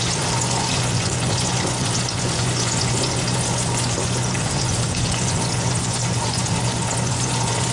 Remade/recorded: remade